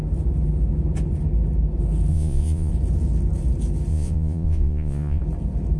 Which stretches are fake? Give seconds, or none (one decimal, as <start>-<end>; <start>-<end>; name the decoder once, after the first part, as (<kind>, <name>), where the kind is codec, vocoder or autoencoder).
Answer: 2.1-2.7 (vocoder, Vocos); 3.9-5.2